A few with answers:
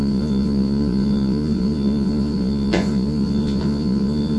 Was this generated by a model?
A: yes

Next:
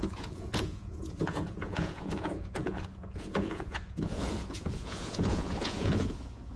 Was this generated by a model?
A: yes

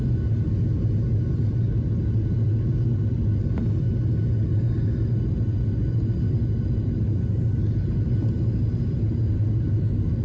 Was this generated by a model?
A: no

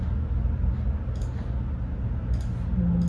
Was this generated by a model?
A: no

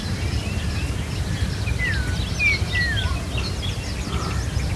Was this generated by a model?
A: no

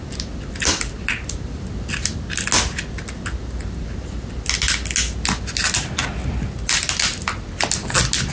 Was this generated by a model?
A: no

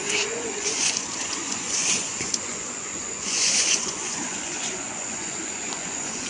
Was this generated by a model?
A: yes